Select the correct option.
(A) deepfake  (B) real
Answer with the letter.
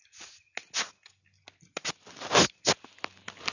B